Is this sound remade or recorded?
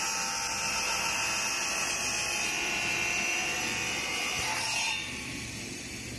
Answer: remade